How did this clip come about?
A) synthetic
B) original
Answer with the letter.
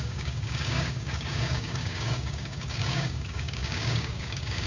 A